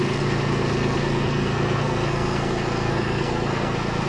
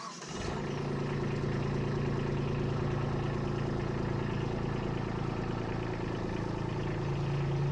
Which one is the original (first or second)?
second